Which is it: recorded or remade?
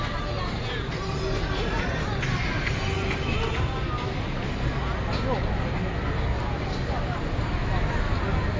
recorded